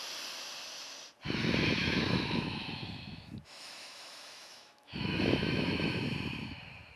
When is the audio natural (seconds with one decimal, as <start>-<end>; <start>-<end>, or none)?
0.0-1.8; 6.0-7.0